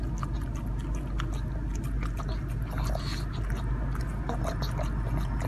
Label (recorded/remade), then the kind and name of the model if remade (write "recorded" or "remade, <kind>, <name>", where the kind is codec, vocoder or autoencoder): recorded